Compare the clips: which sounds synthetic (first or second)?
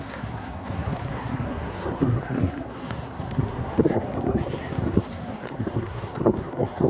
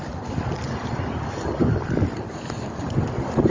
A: first